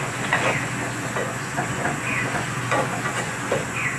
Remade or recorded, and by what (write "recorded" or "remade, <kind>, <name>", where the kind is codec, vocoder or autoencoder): remade, vocoder, Vocos